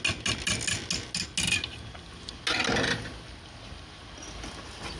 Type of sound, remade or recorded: recorded